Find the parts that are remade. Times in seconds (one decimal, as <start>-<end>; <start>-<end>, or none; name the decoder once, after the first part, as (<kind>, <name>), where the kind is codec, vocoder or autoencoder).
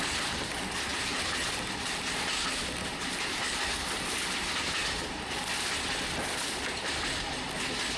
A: none